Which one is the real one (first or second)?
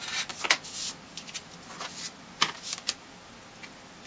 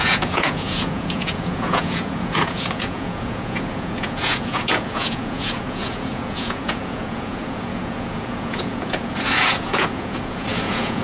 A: first